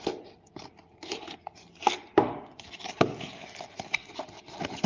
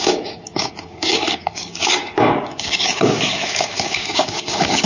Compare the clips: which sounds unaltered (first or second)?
first